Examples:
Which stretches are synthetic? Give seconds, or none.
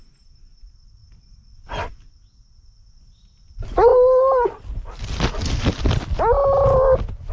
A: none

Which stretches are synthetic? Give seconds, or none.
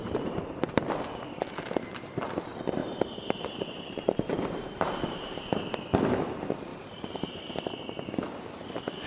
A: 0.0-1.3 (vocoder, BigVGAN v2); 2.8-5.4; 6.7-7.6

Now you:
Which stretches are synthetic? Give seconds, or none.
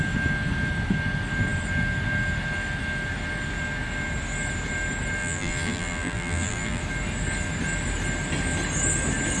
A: 5.2-6.8 (vocoder, BigVGAN v2)